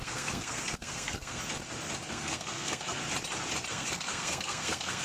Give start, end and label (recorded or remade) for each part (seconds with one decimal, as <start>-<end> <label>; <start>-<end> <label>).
0.0-1.4 remade; 1.4-2.1 recorded; 2.1-3.0 remade; 3.0-3.7 recorded; 3.7-5.0 remade